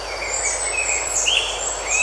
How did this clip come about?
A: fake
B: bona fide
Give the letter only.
B